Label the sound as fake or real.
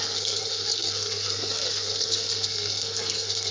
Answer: fake